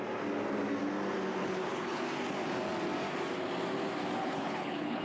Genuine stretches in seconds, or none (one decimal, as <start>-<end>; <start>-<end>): 0.0-1.4; 2.0-4.2